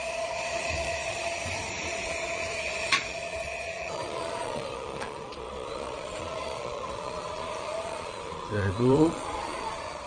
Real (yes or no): no